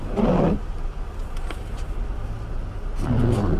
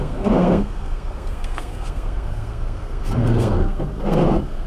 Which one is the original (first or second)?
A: first